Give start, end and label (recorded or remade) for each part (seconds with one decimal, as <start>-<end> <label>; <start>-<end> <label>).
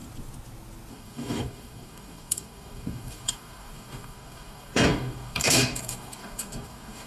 0.0-0.9 recorded; 0.9-7.1 remade